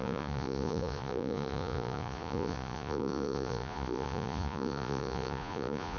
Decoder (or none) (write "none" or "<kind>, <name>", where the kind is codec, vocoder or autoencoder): vocoder, Vocos